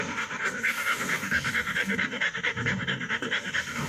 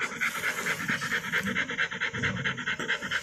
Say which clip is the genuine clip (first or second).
second